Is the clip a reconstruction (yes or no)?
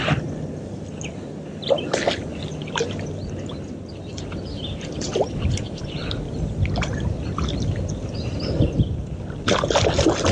no